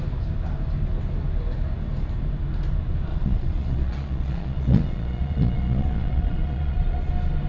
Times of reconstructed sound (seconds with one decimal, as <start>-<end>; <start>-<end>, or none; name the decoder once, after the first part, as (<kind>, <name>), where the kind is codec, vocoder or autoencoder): 3.1-7.1 (vocoder, Vocos)